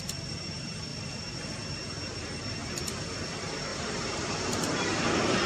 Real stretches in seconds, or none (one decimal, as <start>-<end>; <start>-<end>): 0.0-3.7; 4.3-5.5